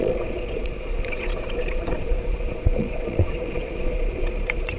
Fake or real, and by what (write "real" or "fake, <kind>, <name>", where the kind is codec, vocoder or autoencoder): fake, vocoder, Vocos